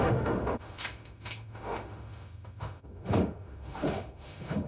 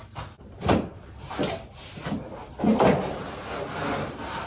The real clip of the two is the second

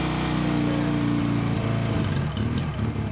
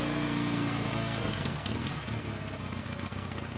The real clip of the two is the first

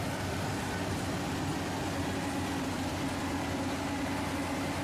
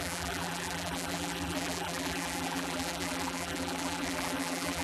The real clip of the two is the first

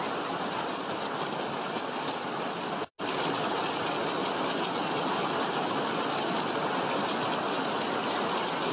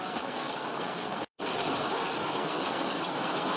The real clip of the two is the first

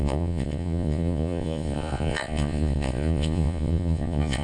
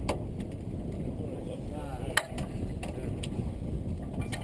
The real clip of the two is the second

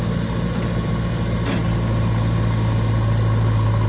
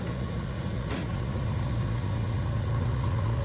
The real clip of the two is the first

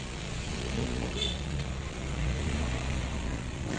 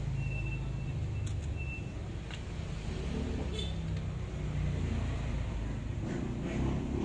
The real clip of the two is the second